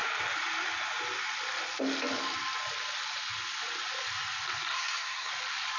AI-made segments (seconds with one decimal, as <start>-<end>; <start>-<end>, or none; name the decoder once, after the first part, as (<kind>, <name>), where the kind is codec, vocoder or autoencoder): 4.7-5.3 (codec, SNAC)